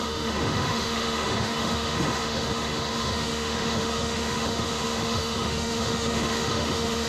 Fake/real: fake